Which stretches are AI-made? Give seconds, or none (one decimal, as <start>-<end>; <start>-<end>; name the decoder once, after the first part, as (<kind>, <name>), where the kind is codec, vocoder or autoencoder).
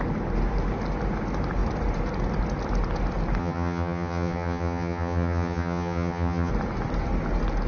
3.4-6.5 (vocoder, HiFi-GAN)